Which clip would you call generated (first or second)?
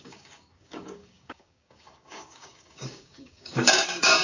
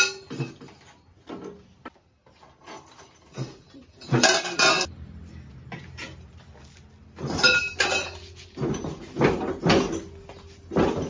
first